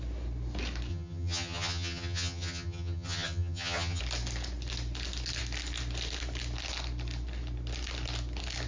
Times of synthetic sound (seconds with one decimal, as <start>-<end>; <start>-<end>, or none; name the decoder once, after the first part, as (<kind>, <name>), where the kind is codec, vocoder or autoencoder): 0.9-4.0 (vocoder, HiFi-GAN)